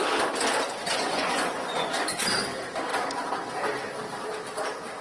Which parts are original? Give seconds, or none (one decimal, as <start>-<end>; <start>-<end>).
0.0-0.8; 2.2-5.0